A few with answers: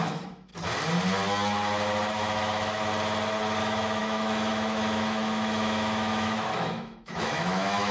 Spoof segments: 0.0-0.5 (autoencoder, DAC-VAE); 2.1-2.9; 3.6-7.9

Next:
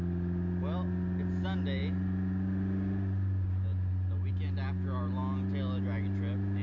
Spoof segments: none